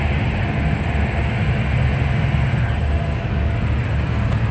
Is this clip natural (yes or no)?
yes